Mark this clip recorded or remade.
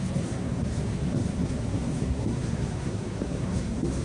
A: remade